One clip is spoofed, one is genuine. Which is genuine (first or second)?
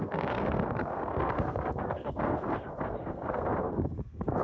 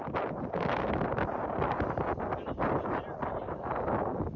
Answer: second